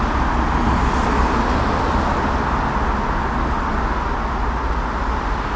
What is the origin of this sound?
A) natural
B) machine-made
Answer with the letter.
A